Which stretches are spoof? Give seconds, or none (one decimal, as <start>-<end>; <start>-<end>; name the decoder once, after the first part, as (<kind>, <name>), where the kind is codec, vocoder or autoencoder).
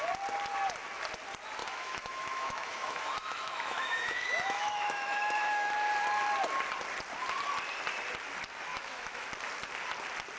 1.6-5.7 (autoencoder, DAC-VAE); 8.7-9.3